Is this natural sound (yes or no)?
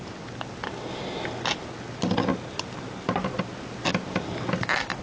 yes